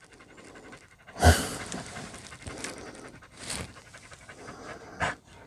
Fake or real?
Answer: fake